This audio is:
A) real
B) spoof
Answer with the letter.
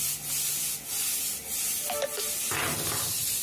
A